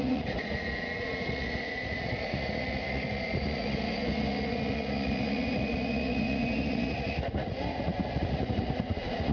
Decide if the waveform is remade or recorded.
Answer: remade